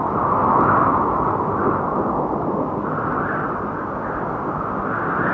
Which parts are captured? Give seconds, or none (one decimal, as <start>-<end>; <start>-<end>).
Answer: 0.0-5.3